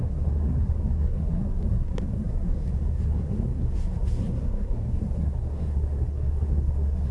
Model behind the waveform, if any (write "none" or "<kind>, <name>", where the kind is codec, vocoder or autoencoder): codec, SNAC